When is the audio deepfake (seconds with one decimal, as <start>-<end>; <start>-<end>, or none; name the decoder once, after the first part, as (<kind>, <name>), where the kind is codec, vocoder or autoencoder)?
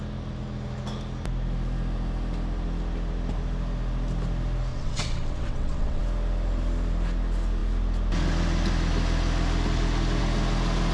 4.7-6.0 (vocoder, WaveNeXt)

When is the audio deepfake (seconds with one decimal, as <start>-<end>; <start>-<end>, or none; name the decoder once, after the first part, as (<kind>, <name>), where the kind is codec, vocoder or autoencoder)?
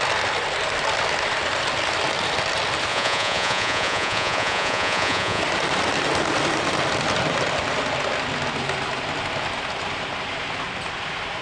2.9-5.4 (vocoder, Vocos)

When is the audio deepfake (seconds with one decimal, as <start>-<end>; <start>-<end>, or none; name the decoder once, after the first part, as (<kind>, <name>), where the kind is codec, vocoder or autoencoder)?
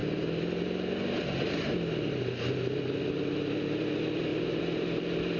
none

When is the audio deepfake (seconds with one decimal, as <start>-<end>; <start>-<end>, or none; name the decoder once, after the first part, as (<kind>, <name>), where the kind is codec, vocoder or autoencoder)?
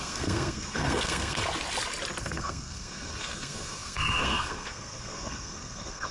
0.0-1.4 (codec, SNAC); 2.2-6.1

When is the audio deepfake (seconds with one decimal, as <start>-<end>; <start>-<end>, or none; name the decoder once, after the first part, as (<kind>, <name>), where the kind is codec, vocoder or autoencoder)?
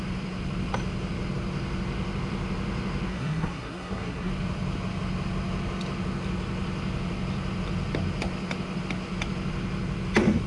3.1-4.3 (codec, SNAC)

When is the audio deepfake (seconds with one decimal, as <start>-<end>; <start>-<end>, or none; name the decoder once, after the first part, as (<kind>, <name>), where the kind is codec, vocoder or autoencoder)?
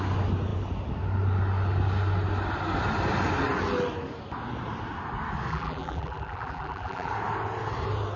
5.5-7.1 (vocoder, BigVGAN v2)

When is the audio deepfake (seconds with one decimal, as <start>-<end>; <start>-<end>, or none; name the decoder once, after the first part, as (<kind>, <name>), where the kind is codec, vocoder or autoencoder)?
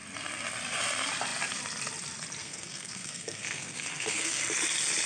2.4-4.4 (codec, SNAC)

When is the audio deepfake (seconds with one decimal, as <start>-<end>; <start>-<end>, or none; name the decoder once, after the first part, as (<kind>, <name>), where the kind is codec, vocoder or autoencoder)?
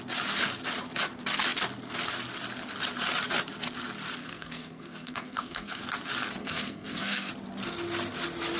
4.2-5.8 (codec, SNAC); 6.4-7.3